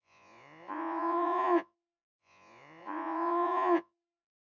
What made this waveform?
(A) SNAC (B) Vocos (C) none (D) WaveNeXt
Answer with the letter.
B